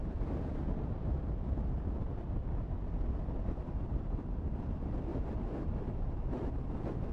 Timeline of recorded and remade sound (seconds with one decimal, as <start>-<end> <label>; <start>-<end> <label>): 0.0-5.1 recorded; 5.1-6.6 remade; 6.6-7.1 recorded